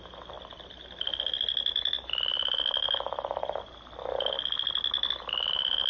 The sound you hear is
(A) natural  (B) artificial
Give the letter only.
A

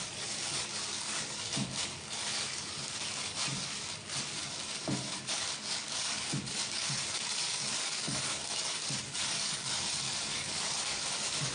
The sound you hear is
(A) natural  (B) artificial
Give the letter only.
B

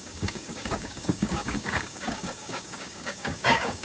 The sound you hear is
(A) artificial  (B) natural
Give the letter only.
A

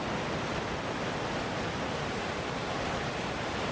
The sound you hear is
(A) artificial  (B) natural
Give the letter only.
B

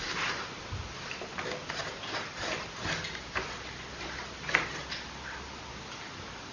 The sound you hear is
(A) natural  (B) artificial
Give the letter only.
A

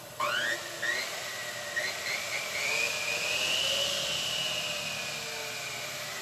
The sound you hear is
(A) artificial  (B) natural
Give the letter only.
B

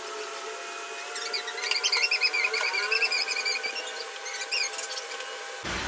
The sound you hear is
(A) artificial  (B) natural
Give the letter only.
B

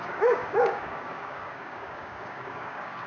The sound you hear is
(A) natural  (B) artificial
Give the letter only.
B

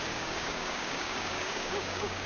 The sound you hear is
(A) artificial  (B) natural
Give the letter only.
A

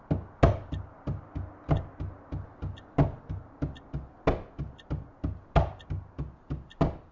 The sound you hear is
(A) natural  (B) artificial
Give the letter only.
A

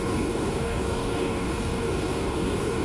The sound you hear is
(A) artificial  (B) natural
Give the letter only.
A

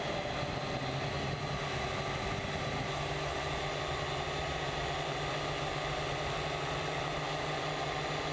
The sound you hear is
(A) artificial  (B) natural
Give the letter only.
B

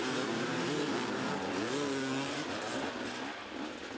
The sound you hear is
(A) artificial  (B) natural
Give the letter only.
B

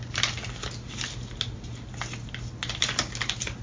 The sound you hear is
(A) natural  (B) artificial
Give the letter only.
A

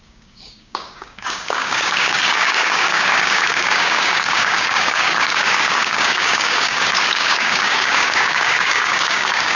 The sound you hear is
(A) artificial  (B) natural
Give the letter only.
A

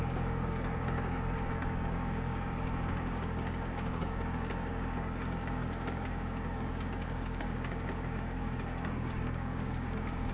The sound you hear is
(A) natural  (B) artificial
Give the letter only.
B